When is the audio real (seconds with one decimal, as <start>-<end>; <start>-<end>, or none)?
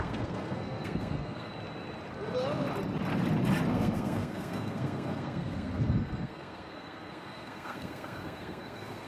1.5-3.7